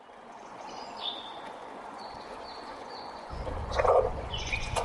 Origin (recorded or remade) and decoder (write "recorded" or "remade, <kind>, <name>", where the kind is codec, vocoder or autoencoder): remade, vocoder, Vocos